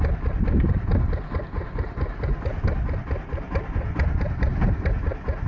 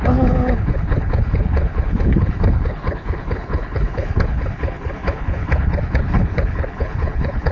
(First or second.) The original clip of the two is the first